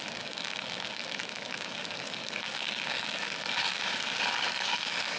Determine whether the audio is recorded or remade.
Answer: remade